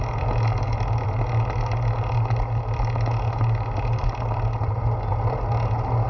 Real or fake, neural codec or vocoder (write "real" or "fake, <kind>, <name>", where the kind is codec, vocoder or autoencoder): real